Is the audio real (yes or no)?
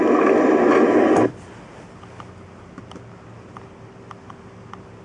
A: yes